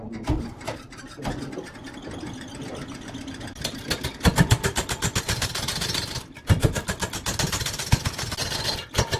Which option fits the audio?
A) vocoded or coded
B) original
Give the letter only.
B